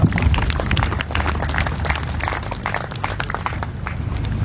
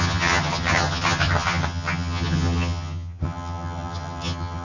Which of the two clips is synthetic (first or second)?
second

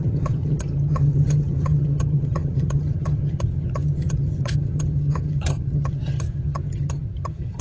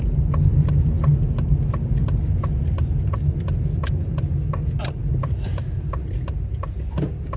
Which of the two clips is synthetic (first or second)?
first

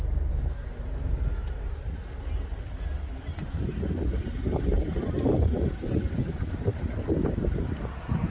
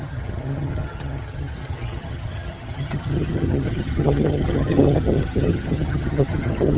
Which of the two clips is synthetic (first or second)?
second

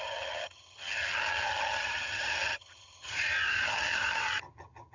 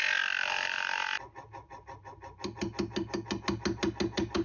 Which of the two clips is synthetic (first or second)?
first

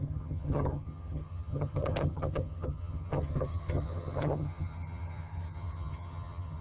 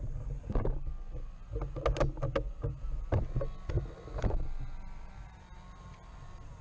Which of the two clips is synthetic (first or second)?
first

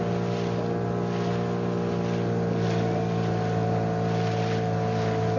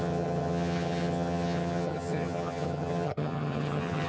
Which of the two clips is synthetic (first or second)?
second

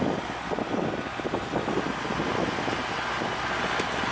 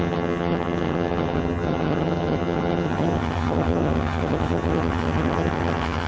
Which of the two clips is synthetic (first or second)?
second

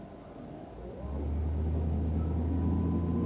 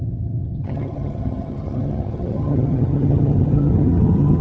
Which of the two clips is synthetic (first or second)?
second